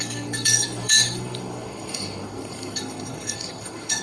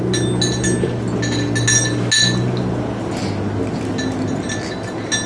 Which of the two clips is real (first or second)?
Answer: second